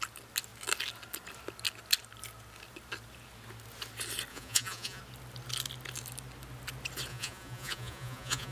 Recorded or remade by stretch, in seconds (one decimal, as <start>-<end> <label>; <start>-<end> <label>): 0.0-4.3 recorded; 4.3-5.0 remade; 5.0-7.1 recorded; 7.1-8.5 remade